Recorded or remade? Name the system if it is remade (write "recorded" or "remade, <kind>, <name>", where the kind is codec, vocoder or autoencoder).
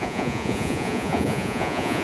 remade, vocoder, Vocos